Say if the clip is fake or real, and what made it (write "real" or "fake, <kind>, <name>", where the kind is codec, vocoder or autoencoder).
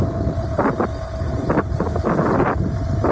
real